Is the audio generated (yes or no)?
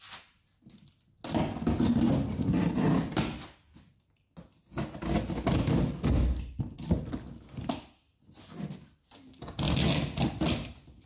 no